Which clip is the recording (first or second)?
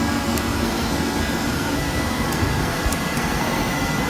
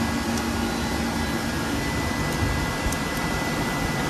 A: second